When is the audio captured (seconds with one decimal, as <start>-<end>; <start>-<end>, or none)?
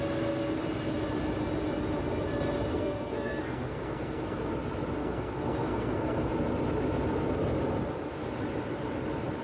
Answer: 0.0-2.7; 4.5-5.0; 6.3-9.4